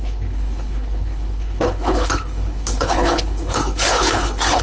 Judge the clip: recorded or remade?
remade